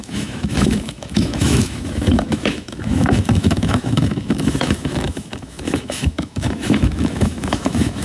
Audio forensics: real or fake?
fake